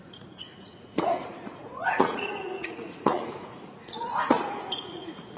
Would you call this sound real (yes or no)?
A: no